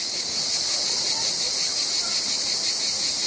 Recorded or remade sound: remade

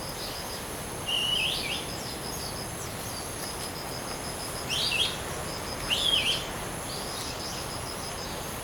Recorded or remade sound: recorded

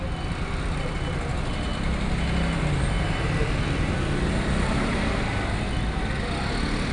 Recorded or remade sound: recorded